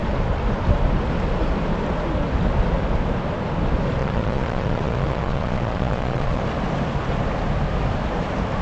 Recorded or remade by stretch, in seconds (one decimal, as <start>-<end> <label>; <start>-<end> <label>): 0.0-4.0 recorded; 4.0-6.4 remade; 6.4-8.6 recorded